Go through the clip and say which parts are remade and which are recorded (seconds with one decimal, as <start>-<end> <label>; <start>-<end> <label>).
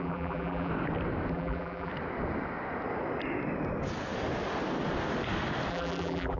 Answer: 0.0-0.7 remade; 0.7-1.3 recorded; 1.3-1.9 remade; 1.9-5.7 recorded; 5.7-6.4 remade